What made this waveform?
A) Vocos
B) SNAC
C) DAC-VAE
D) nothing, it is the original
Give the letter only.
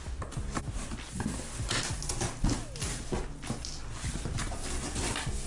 D